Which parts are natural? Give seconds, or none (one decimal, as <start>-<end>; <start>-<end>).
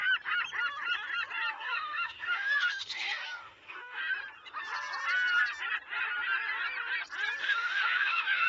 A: 0.0-1.5; 4.0-7.4